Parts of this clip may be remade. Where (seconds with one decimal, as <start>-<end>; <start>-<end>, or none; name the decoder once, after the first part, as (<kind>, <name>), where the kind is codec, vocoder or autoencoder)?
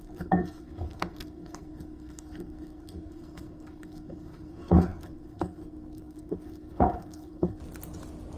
0.0-7.6 (codec, SNAC)